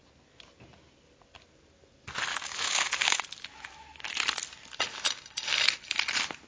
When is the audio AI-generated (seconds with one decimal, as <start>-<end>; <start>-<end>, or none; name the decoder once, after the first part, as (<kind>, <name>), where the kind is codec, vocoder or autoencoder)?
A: 2.3-4.0 (autoencoder, DAC-VAE)